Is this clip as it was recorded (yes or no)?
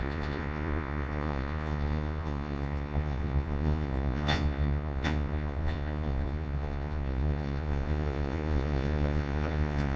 no